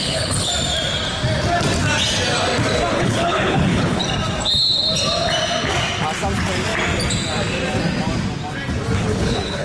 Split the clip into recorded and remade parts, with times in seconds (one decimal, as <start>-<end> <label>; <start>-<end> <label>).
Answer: 0.0-0.5 remade; 0.5-2.9 recorded; 2.9-4.0 remade; 4.0-9.0 recorded; 9.0-9.6 remade